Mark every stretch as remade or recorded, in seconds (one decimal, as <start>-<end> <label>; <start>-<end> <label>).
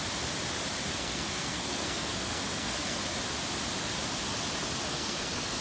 0.0-0.9 recorded; 0.9-3.0 remade; 3.0-4.9 recorded; 4.9-5.6 remade